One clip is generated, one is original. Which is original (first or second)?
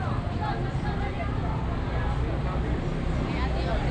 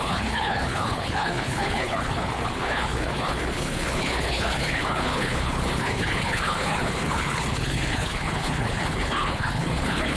first